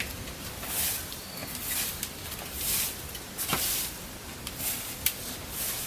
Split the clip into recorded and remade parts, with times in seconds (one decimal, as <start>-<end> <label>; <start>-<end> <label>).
0.0-5.9 remade